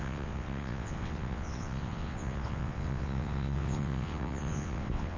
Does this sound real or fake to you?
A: fake